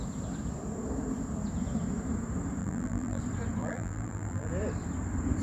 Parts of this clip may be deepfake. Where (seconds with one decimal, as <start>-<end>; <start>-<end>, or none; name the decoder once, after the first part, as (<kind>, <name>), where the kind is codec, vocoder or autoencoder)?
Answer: 2.6-3.2 (vocoder, BigVGAN v2); 3.6-4.5